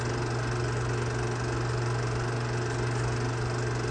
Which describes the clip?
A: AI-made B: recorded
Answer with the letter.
B